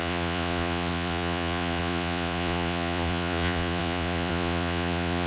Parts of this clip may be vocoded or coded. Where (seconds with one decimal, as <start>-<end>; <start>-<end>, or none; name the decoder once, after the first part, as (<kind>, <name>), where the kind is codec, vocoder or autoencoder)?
0.0-5.3 (vocoder, Vocos)